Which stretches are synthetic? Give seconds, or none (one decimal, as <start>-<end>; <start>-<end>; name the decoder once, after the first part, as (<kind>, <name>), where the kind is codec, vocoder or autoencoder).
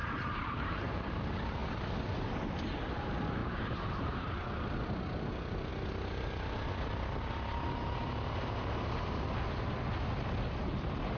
0.0-1.2 (vocoder, BigVGAN v2); 3.4-4.5